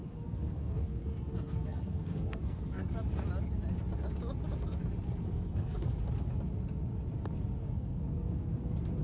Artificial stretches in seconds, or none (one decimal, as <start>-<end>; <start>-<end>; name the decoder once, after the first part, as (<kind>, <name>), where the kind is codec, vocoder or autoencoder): 0.0-2.9 (codec, SNAC); 5.2-6.0; 7.6-8.6